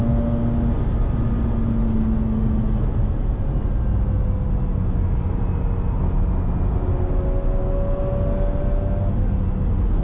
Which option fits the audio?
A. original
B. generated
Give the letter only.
A